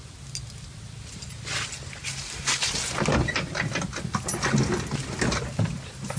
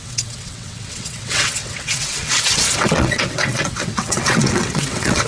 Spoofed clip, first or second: second